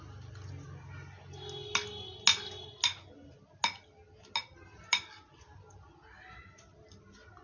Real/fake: real